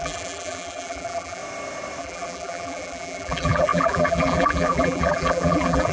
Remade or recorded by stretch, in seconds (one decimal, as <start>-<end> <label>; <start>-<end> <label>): 0.0-1.4 remade; 1.4-2.0 recorded; 2.0-5.9 remade